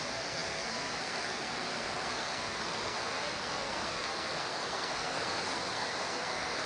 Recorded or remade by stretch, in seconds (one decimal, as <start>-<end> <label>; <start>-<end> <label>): 0.0-6.7 remade